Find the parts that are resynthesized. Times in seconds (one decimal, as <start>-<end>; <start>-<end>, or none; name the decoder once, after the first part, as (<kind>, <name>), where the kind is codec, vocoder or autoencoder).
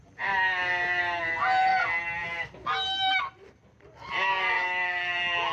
0.0-1.7 (vocoder, BigVGAN v2); 3.2-5.5